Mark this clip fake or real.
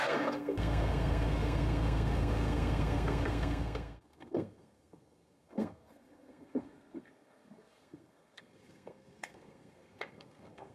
fake